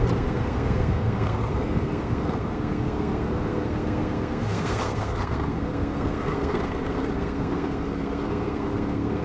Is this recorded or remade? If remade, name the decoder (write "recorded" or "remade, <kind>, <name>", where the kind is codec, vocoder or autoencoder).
remade, codec, SNAC